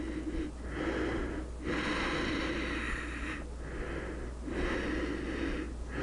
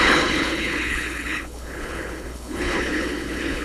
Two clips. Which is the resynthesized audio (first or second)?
second